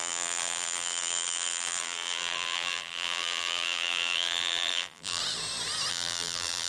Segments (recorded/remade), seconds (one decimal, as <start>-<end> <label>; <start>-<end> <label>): 0.0-5.2 remade; 5.2-5.9 recorded; 5.9-6.7 remade